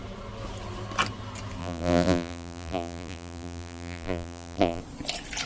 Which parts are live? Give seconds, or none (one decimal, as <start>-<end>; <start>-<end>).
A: 0.0-1.6; 4.8-5.5